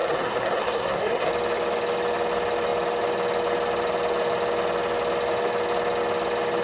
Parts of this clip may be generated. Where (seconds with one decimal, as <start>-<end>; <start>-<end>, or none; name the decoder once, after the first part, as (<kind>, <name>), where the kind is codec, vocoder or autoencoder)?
0.0-1.3 (codec, SNAC)